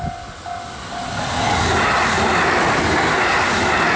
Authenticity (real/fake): real